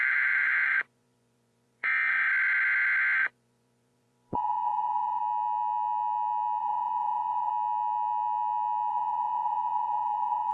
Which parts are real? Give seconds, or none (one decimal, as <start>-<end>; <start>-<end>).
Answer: 2.3-3.2; 5.2-6.6; 7.5-8.9